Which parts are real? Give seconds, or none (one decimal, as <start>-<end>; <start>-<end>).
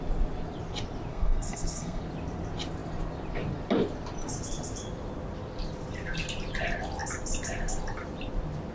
0.0-1.1; 2.0-8.7